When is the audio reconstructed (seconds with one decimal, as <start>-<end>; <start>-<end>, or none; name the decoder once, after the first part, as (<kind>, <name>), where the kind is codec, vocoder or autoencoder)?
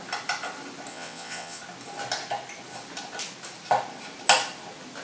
0.9-1.6 (vocoder, WaveNeXt)